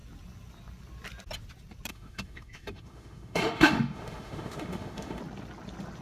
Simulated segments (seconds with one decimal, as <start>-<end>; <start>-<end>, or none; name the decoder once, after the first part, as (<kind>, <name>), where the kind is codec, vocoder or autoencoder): 1.9-5.2 (autoencoder, DAC-VAE)